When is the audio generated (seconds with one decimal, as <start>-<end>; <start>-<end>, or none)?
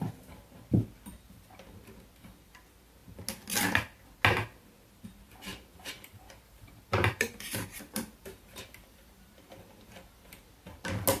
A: 5.5-10.2